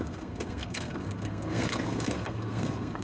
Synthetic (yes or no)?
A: yes